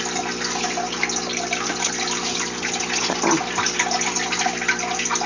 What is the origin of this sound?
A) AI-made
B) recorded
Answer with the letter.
B